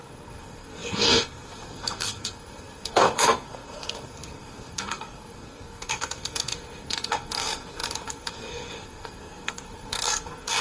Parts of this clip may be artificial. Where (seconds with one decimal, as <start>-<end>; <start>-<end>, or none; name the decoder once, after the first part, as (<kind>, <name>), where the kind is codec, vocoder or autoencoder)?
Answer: 0.0-10.6 (codec, SNAC)